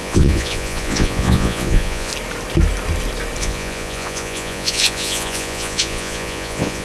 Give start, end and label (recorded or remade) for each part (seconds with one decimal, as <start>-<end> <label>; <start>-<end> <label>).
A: 0.0-2.1 remade; 2.1-3.4 recorded; 3.4-6.8 remade